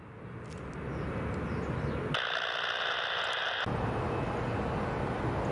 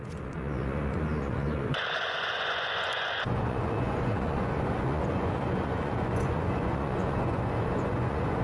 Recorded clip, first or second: first